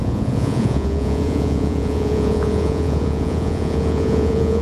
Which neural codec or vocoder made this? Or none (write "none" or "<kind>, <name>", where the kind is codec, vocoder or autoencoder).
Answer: vocoder, Vocos